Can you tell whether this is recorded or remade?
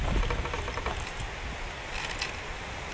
recorded